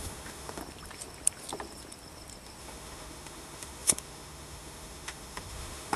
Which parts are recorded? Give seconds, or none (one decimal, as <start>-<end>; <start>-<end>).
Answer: 0.6-2.6